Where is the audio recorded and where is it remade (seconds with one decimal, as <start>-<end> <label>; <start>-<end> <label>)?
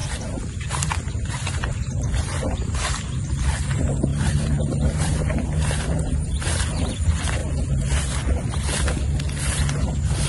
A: 0.0-2.8 remade; 2.8-4.1 recorded; 4.1-6.8 remade; 6.8-10.3 recorded